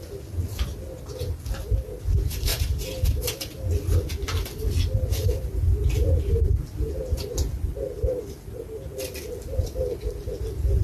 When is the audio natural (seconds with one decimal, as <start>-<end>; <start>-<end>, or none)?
0.0-10.8